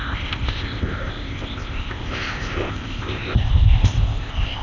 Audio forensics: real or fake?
fake